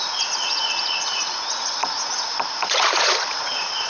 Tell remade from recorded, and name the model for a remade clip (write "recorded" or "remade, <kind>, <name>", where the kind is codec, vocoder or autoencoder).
remade, vocoder, Vocos